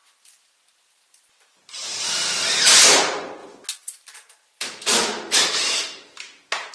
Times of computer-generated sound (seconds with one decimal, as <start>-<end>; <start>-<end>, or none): 0.0-2.4; 3.4-6.7